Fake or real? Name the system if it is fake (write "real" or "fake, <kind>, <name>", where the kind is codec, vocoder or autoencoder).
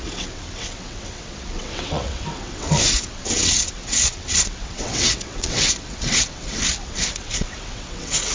fake, vocoder, WaveNeXt